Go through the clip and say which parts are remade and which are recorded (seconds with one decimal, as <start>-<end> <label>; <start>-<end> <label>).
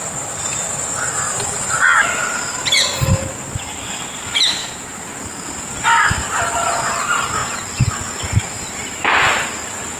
0.0-4.6 recorded; 4.6-5.1 remade; 5.1-10.0 recorded